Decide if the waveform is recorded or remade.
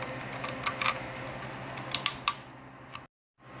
recorded